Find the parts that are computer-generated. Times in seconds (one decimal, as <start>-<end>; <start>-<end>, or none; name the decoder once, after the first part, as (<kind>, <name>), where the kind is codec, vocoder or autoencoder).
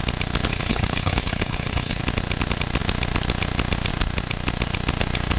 0.5-2.0 (codec, HILCodec)